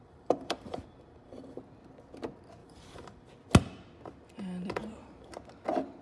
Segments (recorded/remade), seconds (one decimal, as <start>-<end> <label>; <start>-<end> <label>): 0.0-1.6 remade; 1.6-2.6 recorded; 2.6-3.3 remade; 3.3-4.8 recorded; 4.8-5.3 remade; 5.3-6.0 recorded